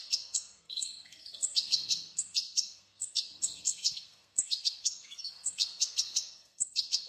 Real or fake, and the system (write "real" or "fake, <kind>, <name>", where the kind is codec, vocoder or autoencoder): fake, codec, SNAC